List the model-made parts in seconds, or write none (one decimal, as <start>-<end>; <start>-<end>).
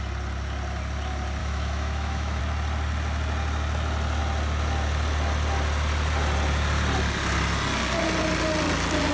1.4-2.4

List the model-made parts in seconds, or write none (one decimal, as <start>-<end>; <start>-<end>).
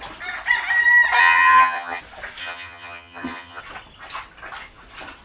1.2-2.0; 2.4-3.6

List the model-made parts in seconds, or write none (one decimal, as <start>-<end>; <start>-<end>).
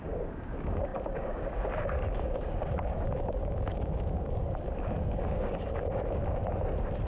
0.0-6.2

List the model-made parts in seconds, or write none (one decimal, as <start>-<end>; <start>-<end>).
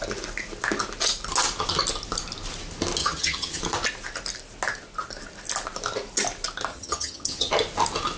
3.0-3.6; 6.7-7.5